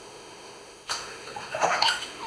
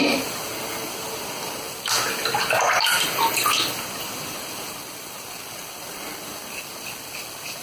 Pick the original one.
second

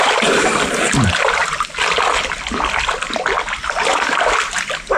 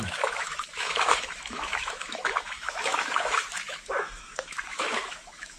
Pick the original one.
first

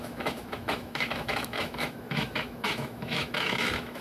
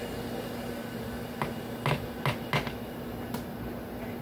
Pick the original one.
second